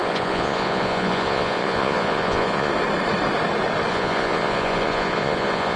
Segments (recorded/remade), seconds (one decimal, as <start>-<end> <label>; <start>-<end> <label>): 0.0-2.7 remade; 2.7-3.9 recorded; 3.9-5.8 remade